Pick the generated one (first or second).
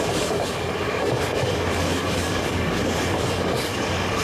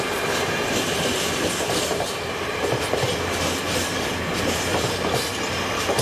first